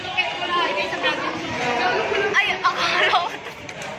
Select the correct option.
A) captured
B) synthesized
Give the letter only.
A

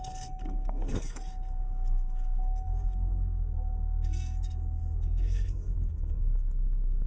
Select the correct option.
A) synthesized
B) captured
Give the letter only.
A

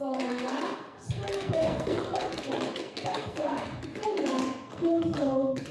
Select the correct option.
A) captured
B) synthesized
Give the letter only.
B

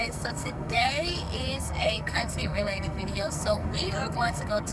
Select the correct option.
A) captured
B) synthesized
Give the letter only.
B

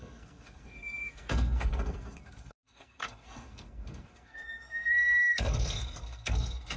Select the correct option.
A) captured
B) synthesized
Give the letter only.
B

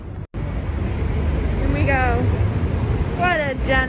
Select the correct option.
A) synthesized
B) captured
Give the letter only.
B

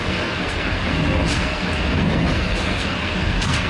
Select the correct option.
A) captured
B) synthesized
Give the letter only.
B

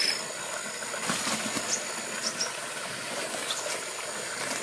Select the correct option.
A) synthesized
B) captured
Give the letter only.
B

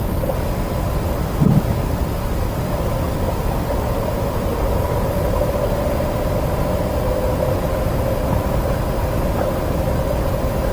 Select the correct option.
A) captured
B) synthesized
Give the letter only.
A